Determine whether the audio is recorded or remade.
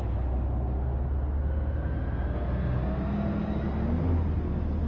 recorded